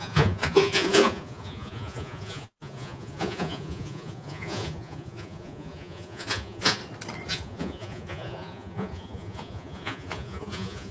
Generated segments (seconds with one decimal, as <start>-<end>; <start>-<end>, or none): 0.0-6.8; 7.3-10.9